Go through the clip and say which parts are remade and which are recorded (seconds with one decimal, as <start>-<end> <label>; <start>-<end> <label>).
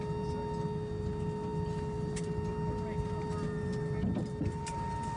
0.0-5.2 recorded